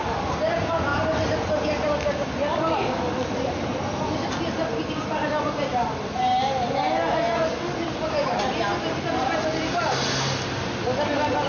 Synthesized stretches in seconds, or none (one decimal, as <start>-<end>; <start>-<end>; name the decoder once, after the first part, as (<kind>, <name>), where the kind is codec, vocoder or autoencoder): 0.9-4.8 (vocoder, BigVGAN v2)